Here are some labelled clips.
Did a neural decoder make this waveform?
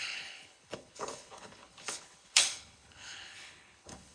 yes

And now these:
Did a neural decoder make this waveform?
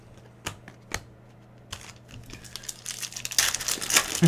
no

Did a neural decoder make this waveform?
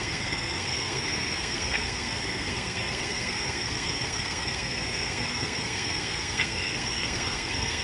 yes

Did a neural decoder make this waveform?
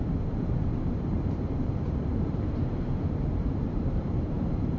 yes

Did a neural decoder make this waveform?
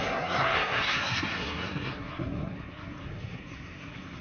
yes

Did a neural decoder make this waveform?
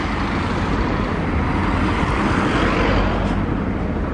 no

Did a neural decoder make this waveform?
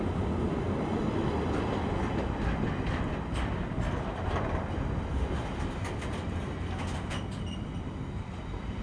no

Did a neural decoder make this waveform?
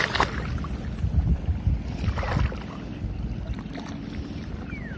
no